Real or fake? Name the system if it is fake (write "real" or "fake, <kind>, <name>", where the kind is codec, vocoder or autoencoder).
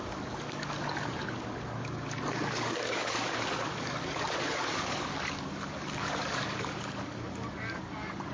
fake, codec, DAC